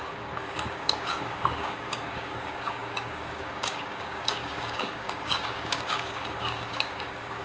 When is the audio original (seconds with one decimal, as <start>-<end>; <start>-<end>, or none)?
none